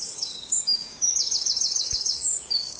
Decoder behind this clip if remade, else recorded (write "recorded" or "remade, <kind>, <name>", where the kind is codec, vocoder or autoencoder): remade, codec, DAC